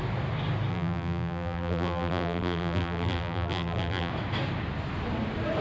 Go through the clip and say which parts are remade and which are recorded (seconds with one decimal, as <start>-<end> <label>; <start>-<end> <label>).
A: 0.0-0.7 recorded; 0.7-4.1 remade; 4.1-5.6 recorded